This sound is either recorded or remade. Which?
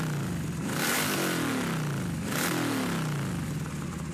recorded